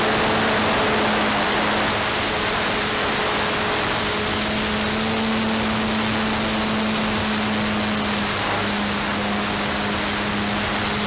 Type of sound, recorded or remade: recorded